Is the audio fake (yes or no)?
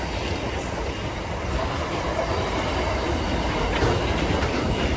no